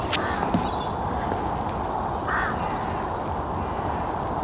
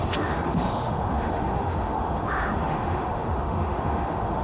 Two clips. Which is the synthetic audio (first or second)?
second